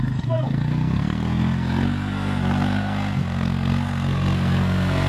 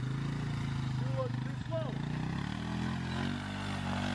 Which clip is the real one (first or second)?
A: second